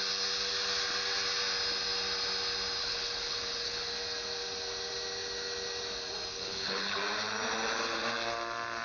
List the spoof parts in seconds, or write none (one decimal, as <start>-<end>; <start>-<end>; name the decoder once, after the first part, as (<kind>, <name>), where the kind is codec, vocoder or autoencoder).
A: 2.8-3.9 (codec, HILCodec); 6.3-7.0